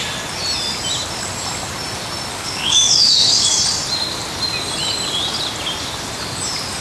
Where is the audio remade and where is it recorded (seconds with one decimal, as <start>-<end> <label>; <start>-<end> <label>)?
0.0-2.3 recorded; 2.3-3.6 remade; 3.6-6.8 recorded